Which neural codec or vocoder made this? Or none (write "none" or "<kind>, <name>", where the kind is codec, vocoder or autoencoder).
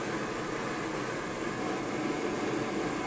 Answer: none